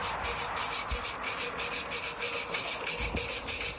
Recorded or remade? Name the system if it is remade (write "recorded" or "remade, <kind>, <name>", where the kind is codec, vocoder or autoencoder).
recorded